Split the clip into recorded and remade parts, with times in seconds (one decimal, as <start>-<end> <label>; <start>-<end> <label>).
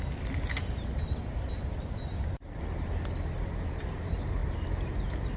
0.0-5.4 recorded